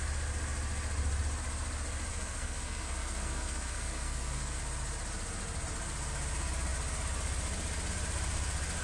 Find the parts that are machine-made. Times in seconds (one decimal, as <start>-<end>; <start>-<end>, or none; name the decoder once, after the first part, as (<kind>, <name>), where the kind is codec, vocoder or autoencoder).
2.1-4.6 (codec, SNAC)